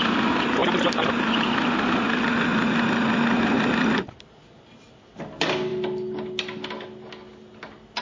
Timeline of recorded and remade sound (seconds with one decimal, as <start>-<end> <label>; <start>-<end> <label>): 0.0-8.0 recorded